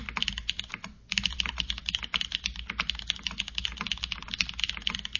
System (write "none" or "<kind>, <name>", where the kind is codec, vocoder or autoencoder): none